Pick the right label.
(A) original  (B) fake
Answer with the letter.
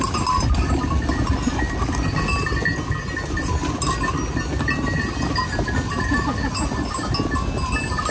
A